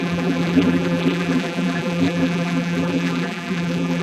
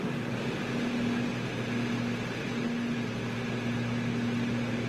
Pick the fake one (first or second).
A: first